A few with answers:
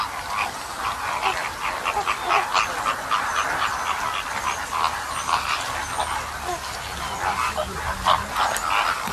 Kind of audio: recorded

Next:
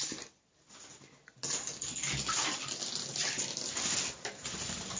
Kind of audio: recorded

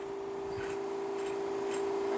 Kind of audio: recorded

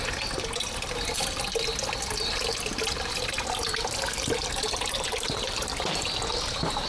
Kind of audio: recorded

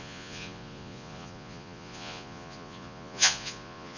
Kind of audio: remade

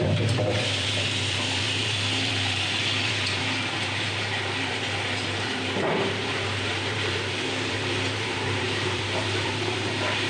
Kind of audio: remade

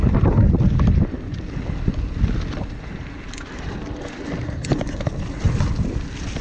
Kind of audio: recorded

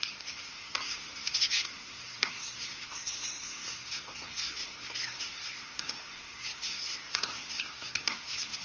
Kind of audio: remade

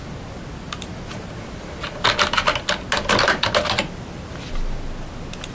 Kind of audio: recorded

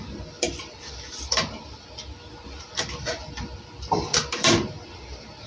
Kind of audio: remade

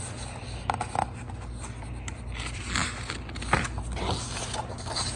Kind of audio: recorded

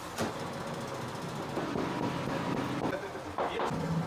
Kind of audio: recorded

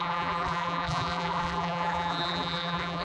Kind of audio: remade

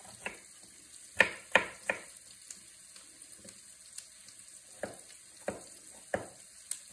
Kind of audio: recorded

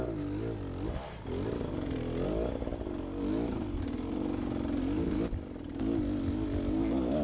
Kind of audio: recorded